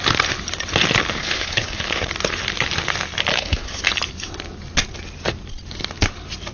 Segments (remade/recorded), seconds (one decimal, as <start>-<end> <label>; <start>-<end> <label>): 0.0-1.2 recorded; 1.2-2.1 remade; 2.1-3.3 recorded; 3.3-3.8 remade; 3.8-6.5 recorded